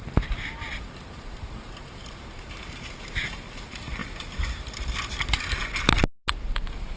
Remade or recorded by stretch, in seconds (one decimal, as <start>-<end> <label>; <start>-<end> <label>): 0.0-7.0 recorded